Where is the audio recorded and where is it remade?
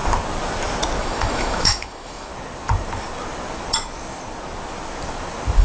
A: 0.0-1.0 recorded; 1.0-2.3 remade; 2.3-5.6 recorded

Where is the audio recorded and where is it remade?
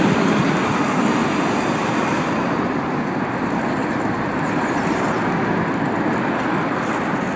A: 0.0-1.2 recorded; 1.2-3.0 remade; 3.0-3.8 recorded; 3.8-5.2 remade; 5.2-7.4 recorded